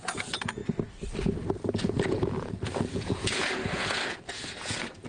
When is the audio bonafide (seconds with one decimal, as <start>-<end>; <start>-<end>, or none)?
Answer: 0.6-1.8